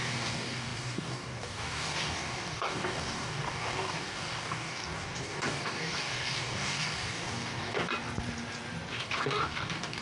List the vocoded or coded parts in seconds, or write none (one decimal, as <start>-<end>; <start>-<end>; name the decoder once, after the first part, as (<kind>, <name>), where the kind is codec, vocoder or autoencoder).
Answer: 0.0-7.9 (codec, DAC); 8.9-10.0